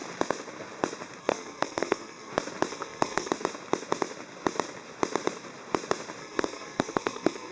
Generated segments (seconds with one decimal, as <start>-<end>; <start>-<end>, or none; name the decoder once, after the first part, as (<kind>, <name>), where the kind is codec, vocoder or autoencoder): 1.2-2.3 (codec, SNAC); 2.7-3.3; 6.2-7.5